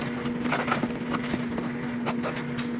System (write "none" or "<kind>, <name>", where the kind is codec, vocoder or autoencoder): none